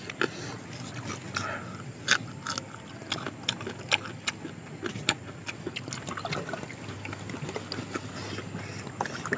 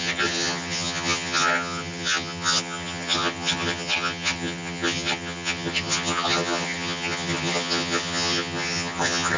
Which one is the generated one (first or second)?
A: second